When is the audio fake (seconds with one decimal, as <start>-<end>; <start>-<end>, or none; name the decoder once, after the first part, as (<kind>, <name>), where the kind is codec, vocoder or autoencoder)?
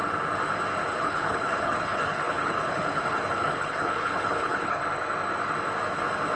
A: 1.0-4.8 (codec, HILCodec)